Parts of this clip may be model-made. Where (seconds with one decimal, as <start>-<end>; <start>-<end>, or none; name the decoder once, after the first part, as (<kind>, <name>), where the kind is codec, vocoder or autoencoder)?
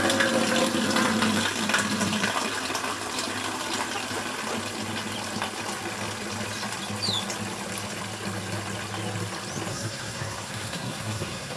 9.7-11.6 (codec, SNAC)